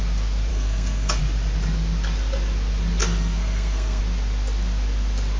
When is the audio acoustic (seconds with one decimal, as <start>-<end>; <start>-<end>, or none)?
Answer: 0.0-0.5; 1.2-3.0; 4.0-5.4